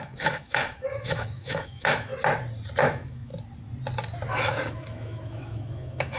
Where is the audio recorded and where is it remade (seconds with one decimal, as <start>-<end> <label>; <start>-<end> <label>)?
0.0-2.1 remade; 2.1-2.8 recorded; 2.8-3.3 remade; 3.3-4.3 recorded; 4.3-6.2 remade